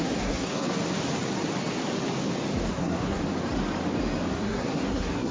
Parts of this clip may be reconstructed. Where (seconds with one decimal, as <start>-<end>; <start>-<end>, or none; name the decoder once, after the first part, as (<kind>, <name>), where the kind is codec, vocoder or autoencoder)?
0.0-0.7 (codec, SNAC); 2.7-3.2; 4.3-5.3